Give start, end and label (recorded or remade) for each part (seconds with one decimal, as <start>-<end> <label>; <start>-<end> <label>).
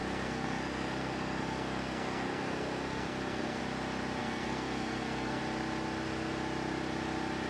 0.0-3.6 remade; 3.6-4.2 recorded; 4.2-5.4 remade; 5.4-7.5 recorded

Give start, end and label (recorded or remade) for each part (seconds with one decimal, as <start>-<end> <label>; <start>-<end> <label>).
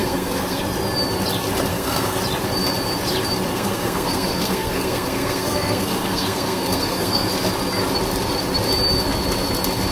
0.0-0.6 remade; 0.6-1.7 recorded; 1.7-2.2 remade; 2.2-3.5 recorded; 3.5-7.3 remade; 7.3-9.9 recorded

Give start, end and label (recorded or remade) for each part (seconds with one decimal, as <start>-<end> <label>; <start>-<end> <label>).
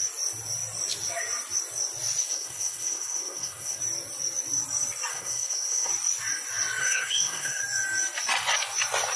0.0-2.2 recorded; 2.2-3.8 remade; 3.8-5.1 recorded; 5.1-5.9 remade; 5.9-6.8 recorded; 6.8-7.6 remade; 7.6-9.2 recorded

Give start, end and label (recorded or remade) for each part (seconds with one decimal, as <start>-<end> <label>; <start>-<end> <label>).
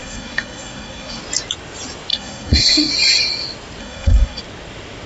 0.0-1.2 remade; 1.2-2.1 recorded; 2.1-2.9 remade; 2.9-3.8 recorded; 3.8-4.4 remade; 4.4-5.1 recorded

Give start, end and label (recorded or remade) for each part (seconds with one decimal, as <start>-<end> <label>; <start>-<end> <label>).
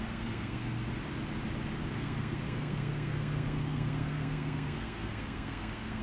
0.0-0.9 remade; 0.9-1.9 recorded; 1.9-6.0 remade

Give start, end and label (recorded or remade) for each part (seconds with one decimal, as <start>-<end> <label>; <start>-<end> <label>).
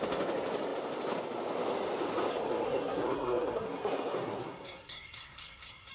0.0-2.3 recorded; 2.3-5.9 remade